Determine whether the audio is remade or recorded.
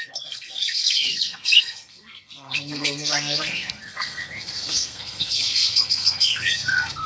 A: remade